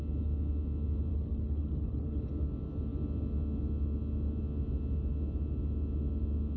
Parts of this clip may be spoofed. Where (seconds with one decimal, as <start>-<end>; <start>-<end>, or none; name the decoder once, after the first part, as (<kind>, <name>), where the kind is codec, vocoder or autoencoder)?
1.1-2.3 (codec, HILCodec)